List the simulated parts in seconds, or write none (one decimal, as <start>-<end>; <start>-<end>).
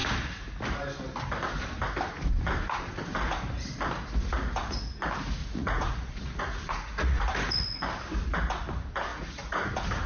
5.4-7.2; 9.1-9.7